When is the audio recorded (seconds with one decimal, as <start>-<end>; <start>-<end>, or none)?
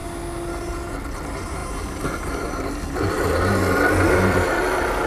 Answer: 0.0-5.1